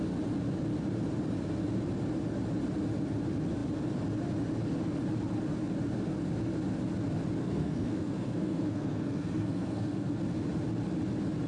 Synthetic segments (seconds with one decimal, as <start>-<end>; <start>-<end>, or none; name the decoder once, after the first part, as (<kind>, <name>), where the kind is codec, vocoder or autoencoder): 7.4-10.2 (codec, SNAC)